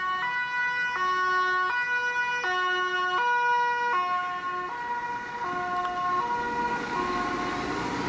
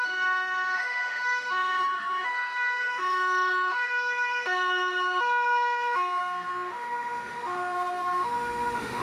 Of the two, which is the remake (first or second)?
second